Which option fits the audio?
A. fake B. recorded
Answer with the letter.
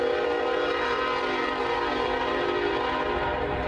A